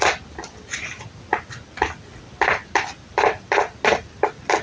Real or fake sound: real